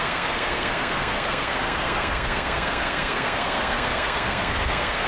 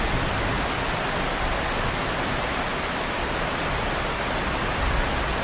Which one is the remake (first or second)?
first